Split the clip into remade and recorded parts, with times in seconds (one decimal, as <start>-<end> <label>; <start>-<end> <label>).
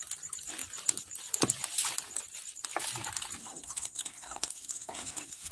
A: 0.0-3.4 recorded; 3.4-5.5 remade